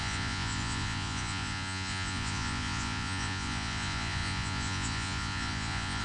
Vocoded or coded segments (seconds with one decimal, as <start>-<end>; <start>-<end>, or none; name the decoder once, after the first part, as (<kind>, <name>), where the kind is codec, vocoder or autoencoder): 0.0-6.0 (vocoder, Vocos)